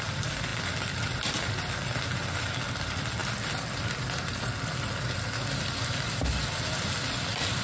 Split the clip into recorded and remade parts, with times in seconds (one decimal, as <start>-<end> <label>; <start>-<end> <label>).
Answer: 0.0-7.6 recorded